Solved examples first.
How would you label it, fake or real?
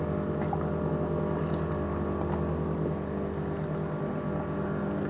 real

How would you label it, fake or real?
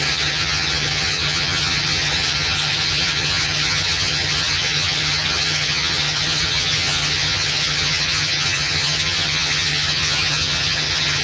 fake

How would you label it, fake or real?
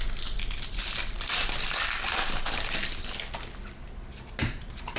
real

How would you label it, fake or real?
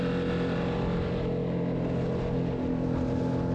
real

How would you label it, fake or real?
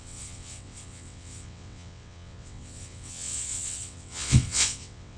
fake